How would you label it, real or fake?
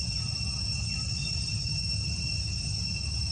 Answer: real